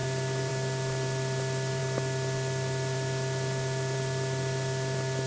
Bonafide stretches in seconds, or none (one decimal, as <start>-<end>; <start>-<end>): 0.0-5.3